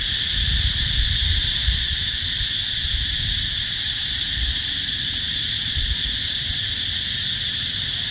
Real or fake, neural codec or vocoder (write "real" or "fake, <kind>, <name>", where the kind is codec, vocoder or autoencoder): fake, vocoder, BigVGAN v2